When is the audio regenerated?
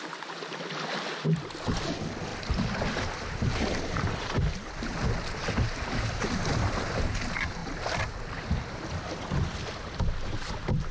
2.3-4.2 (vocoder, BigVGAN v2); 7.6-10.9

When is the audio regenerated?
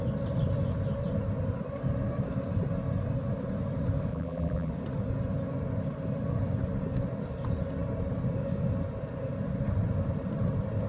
4.1-4.7 (vocoder, BigVGAN v2)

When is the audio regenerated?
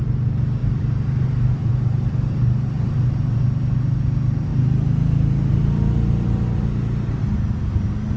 0.6-3.4 (vocoder, BigVGAN v2); 4.5-5.5